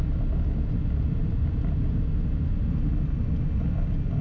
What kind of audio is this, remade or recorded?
recorded